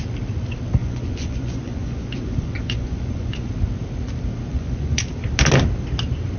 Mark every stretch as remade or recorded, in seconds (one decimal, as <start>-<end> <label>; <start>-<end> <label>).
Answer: 0.0-0.8 recorded; 0.8-3.5 remade; 3.5-4.5 recorded; 4.5-5.0 remade; 5.0-6.4 recorded